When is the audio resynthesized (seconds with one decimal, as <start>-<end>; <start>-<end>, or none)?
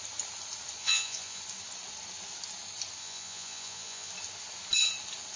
0.8-1.4; 3.0-4.1